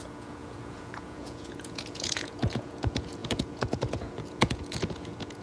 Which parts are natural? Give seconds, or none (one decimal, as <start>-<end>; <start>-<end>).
none